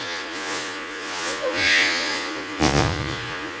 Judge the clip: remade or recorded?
remade